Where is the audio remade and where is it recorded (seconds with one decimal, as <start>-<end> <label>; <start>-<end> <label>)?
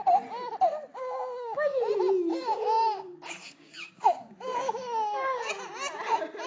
0.0-0.9 recorded; 0.9-1.8 remade; 1.8-2.3 recorded; 2.3-5.5 remade; 5.5-6.5 recorded